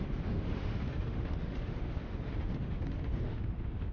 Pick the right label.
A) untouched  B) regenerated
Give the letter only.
B